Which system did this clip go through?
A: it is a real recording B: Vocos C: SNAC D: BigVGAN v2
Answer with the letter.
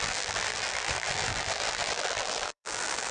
D